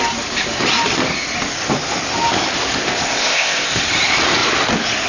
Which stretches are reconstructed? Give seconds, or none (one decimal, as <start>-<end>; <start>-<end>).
2.8-3.8

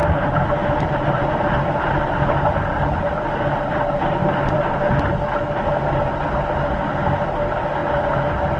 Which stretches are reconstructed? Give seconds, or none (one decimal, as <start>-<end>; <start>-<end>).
0.0-4.7